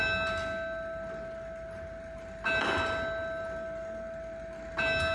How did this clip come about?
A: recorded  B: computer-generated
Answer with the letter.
A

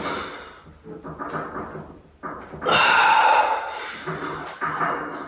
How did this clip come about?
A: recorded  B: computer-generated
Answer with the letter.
A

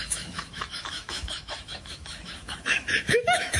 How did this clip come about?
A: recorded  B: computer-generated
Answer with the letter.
B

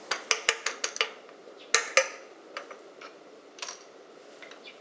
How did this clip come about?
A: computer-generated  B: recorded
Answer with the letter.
B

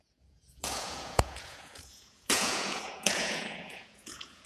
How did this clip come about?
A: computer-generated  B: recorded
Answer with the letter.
A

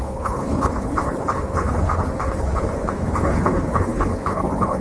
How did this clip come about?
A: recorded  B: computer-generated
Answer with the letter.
B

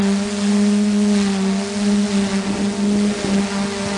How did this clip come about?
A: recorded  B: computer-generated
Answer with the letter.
A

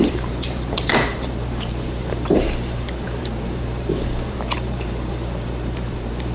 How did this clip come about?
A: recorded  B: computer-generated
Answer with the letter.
B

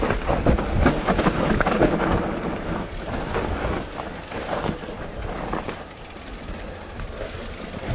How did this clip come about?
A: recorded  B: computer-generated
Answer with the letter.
A